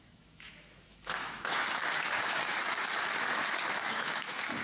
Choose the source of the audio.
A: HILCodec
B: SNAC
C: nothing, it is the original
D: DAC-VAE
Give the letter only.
D